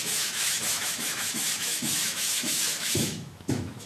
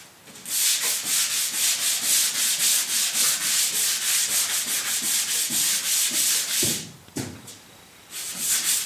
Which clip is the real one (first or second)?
second